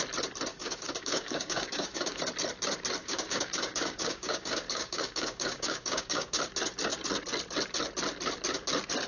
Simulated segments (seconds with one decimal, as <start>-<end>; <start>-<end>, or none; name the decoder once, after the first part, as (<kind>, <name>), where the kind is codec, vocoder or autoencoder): 0.5-2.2 (codec, DAC); 3.0-6.4